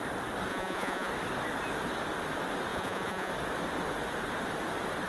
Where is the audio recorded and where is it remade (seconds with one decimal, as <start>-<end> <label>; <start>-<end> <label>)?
0.0-0.5 recorded; 0.5-1.1 remade; 1.1-2.7 recorded; 2.7-3.3 remade; 3.3-5.1 recorded